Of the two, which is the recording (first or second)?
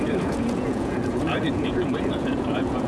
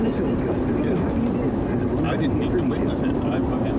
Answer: second